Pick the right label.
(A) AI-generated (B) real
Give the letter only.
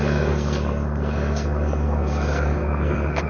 A